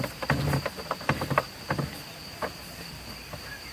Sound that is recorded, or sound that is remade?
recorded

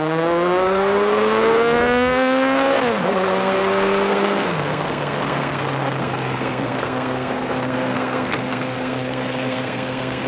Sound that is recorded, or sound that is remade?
remade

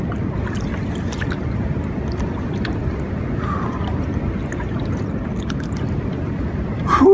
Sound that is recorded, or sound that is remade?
remade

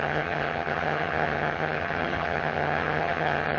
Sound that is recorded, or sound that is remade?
remade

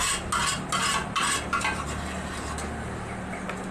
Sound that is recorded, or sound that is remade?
recorded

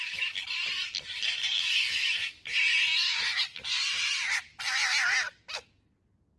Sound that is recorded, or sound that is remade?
remade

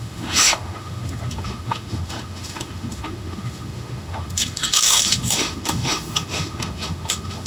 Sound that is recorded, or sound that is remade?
remade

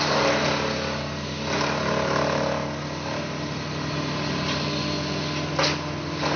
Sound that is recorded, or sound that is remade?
recorded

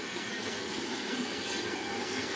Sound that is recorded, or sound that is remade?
remade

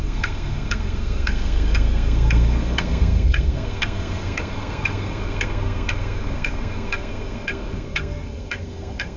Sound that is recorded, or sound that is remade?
remade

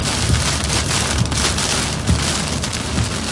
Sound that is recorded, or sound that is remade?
recorded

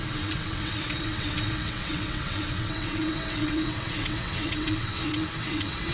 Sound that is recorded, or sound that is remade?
remade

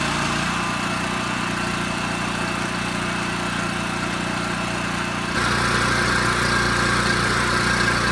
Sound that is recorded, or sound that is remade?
recorded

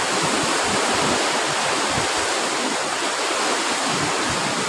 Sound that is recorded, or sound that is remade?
recorded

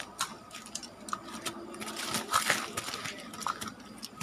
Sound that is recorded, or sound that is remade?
recorded